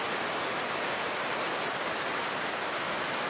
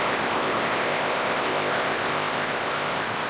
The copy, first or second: second